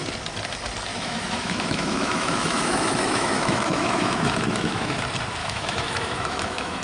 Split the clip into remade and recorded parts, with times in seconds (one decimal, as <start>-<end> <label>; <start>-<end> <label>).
0.0-0.9 recorded; 0.9-5.0 remade; 5.0-5.4 recorded; 5.4-6.8 remade